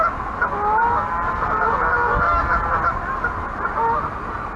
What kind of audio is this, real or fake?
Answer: real